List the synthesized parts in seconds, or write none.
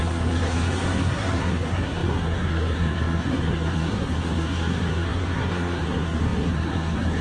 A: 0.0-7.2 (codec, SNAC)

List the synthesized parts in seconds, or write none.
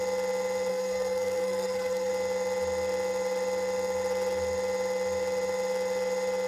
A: 0.7-2.1 (codec, SNAC)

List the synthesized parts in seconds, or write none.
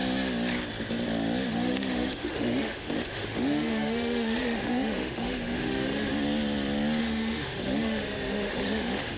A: 1.5-6.1 (autoencoder, DAC-VAE); 7.0-9.2